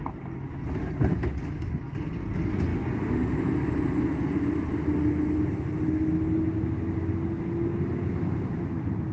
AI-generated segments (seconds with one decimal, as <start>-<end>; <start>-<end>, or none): none